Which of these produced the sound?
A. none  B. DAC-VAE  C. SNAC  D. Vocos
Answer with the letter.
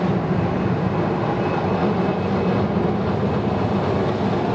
A